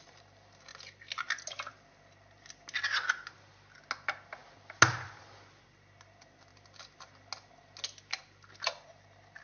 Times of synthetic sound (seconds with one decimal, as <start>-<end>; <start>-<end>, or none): none